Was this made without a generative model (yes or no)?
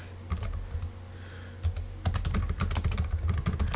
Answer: yes